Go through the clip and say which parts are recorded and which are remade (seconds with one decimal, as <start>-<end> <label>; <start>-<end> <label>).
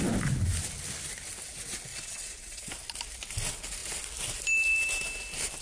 0.0-1.9 recorded; 1.9-2.7 remade; 2.7-5.6 recorded